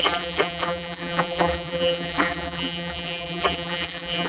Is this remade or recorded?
remade